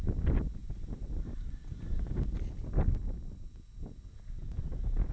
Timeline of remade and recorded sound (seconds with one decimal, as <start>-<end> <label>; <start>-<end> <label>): 0.0-4.4 recorded; 4.4-5.1 remade